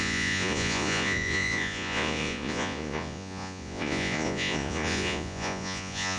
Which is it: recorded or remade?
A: remade